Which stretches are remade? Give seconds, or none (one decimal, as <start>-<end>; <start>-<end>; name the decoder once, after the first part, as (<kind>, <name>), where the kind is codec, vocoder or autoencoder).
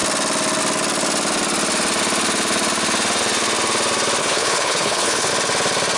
4.2-5.3 (codec, HILCodec)